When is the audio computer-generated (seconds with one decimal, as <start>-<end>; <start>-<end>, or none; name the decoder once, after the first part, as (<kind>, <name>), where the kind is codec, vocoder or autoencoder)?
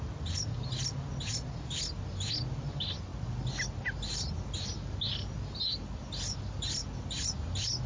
none